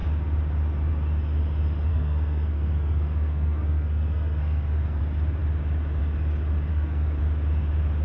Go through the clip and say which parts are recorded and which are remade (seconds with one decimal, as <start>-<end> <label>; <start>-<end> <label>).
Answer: 0.0-1.9 recorded; 1.9-5.0 remade; 5.0-6.7 recorded; 6.7-7.2 remade; 7.2-8.0 recorded